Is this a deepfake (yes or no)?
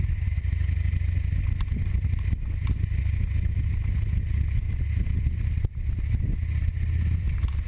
no